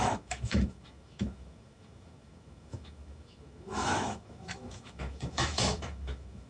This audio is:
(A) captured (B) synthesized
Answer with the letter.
B